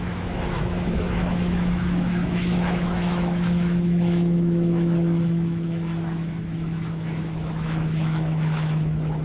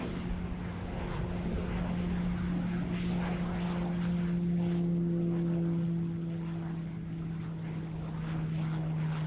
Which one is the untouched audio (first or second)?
second